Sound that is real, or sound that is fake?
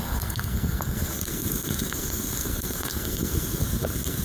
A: fake